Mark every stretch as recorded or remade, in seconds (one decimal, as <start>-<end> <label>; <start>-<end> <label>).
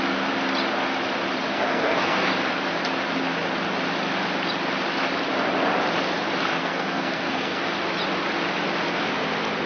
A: 0.0-1.5 recorded; 1.5-2.3 remade; 2.3-6.5 recorded; 6.5-7.6 remade; 7.6-9.7 recorded